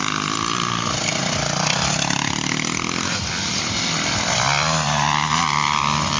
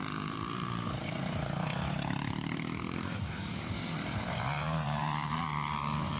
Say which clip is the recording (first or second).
first